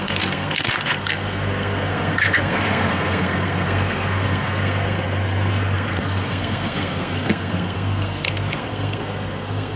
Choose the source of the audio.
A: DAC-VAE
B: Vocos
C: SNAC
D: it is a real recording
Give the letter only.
C